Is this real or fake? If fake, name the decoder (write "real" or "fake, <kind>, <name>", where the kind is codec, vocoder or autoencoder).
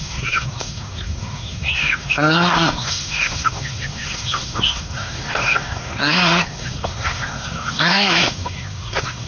fake, codec, SNAC